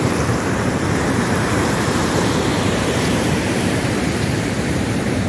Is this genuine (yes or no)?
no